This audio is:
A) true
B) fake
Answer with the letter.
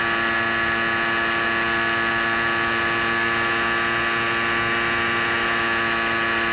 A